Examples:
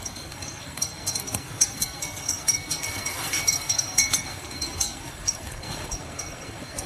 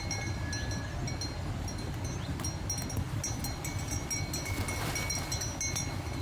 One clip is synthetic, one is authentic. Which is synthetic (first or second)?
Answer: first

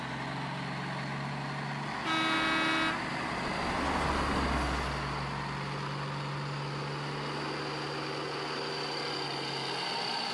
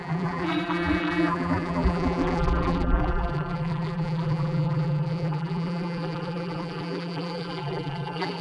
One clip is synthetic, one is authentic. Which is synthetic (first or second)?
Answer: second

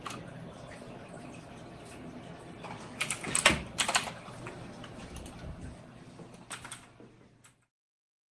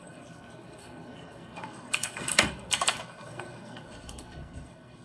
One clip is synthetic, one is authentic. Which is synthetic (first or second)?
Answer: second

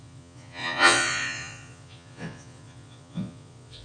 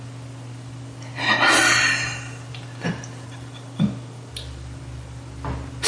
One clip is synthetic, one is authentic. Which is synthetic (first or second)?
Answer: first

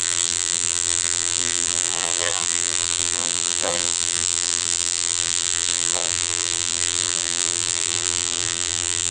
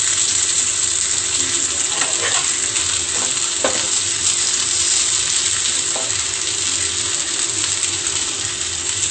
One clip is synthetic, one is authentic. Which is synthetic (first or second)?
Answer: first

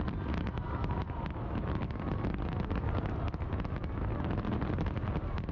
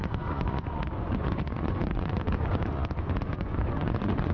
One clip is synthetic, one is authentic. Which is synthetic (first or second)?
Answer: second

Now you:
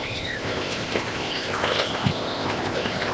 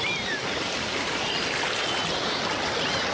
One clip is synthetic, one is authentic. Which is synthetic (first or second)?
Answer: first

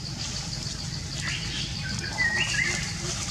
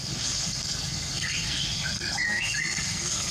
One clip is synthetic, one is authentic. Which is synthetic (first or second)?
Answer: second